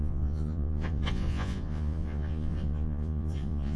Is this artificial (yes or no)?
yes